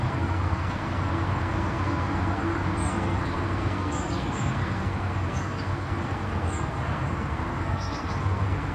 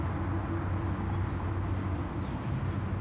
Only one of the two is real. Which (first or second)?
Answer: second